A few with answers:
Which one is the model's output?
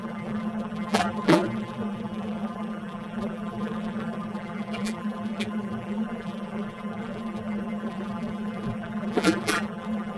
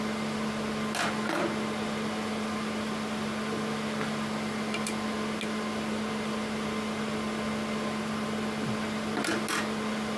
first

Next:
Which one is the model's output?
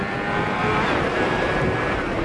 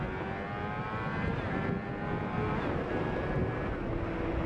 first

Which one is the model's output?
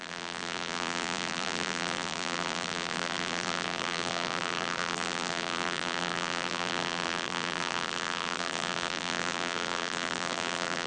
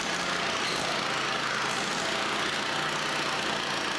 first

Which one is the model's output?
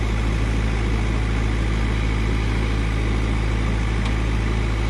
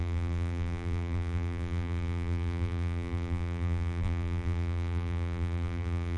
second